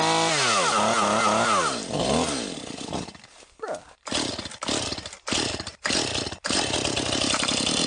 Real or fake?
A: real